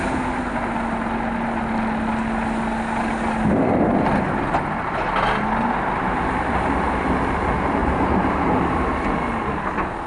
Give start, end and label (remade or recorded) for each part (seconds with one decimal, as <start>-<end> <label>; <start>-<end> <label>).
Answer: 0.0-7.8 recorded; 7.8-9.0 remade; 9.0-10.1 recorded